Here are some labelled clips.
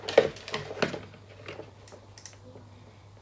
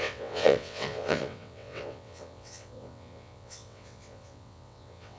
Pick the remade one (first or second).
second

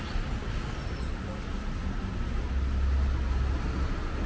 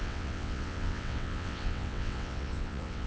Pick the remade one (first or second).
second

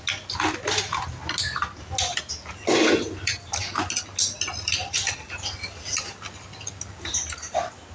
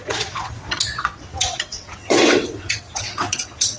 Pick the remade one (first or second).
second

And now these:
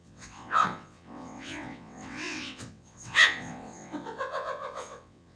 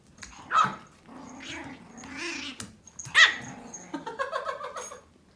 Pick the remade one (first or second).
first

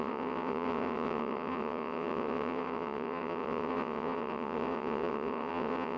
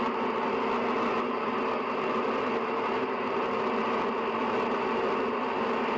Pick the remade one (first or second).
first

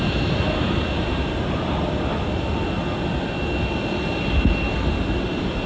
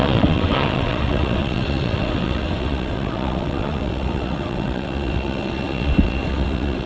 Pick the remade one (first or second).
second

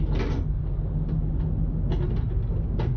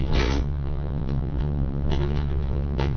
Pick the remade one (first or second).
second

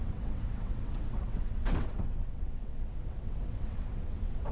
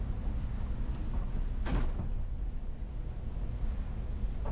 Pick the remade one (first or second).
first